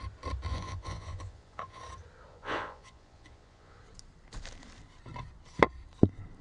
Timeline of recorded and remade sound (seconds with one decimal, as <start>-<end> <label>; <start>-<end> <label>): 0.0-0.5 recorded; 0.5-1.8 remade; 1.8-2.3 recorded; 2.3-3.8 remade; 3.8-6.4 recorded